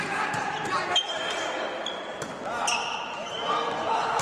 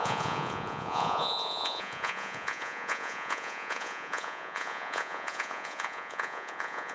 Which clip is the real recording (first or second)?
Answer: first